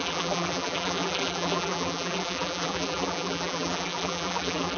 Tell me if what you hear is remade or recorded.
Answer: remade